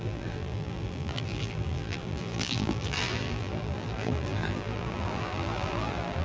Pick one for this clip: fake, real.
fake